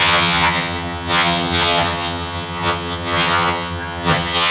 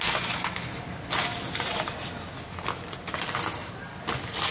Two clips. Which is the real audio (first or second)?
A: second